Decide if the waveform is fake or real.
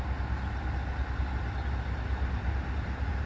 real